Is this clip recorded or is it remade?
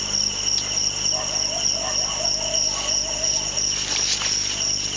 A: recorded